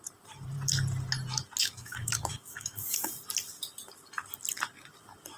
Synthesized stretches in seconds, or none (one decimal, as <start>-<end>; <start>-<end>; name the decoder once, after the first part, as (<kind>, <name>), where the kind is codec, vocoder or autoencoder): 1.6-3.1 (autoencoder, DAC-VAE)